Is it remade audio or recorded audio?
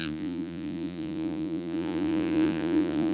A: remade